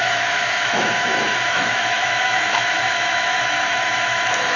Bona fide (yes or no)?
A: no